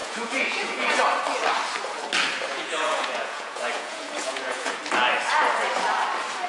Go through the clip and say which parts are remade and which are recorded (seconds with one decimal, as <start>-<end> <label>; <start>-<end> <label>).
0.0-1.0 remade; 1.0-2.5 recorded; 2.5-4.8 remade; 4.8-6.5 recorded